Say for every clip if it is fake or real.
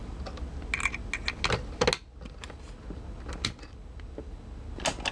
real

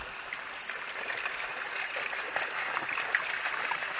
real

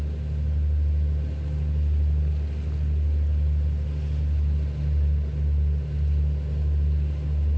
real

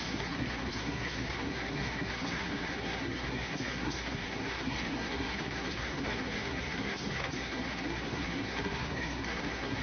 fake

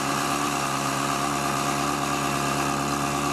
real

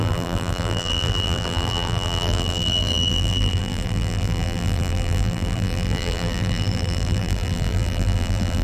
fake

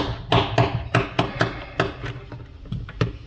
real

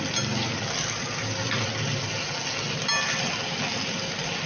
real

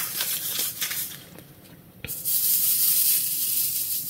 fake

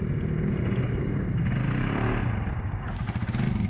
real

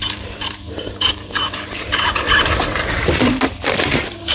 fake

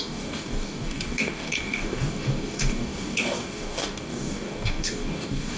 fake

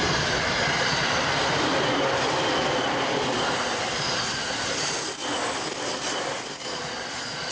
real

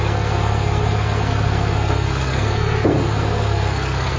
fake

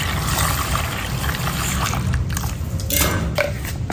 real